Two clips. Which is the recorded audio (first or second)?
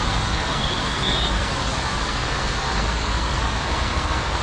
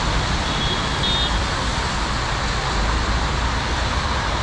second